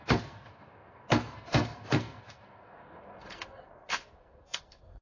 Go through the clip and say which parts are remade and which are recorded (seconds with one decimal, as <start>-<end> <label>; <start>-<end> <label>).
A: 0.0-5.0 remade